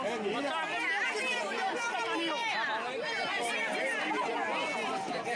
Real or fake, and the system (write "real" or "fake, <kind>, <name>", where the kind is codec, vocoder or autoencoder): real